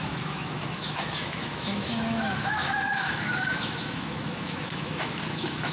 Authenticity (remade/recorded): remade